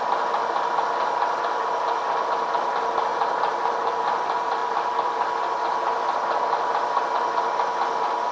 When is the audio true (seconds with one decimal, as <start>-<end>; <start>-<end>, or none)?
0.0-3.1; 3.9-8.3